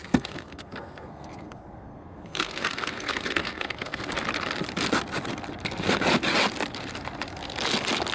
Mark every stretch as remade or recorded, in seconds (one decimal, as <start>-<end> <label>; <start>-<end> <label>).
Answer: 0.0-4.1 remade; 4.1-8.1 recorded